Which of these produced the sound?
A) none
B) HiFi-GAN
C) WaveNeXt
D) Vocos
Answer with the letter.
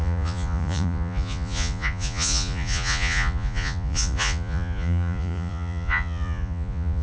D